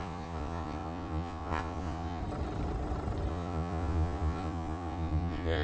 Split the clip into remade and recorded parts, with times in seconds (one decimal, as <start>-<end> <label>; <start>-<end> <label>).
0.0-2.2 remade; 2.2-3.3 recorded; 3.3-5.6 remade